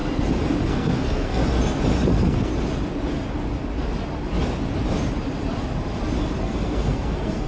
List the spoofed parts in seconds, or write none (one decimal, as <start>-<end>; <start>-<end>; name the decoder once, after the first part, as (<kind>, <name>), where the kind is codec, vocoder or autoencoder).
0.6-1.4 (codec, SNAC); 2.1-2.5; 6.4-7.5